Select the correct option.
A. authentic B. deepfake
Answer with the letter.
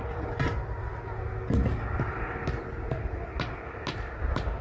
A